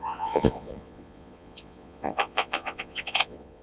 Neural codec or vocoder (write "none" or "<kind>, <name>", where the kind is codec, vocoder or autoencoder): vocoder, Vocos